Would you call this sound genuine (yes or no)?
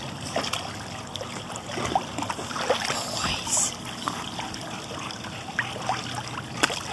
yes